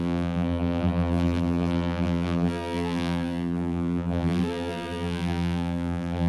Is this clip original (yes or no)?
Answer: no